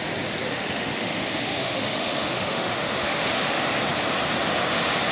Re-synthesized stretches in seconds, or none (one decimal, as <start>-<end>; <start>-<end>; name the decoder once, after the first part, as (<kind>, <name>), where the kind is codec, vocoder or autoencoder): 0.5-3.6 (autoencoder, DAC-VAE)